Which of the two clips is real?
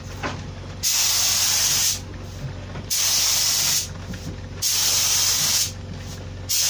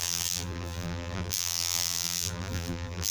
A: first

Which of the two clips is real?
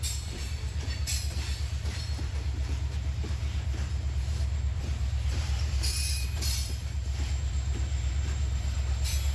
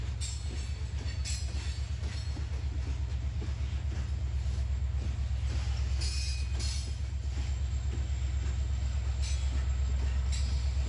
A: second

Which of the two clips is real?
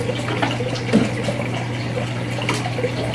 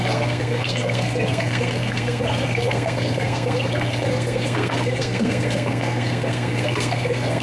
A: first